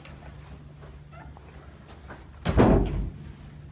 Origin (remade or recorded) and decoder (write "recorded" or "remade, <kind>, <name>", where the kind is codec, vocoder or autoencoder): recorded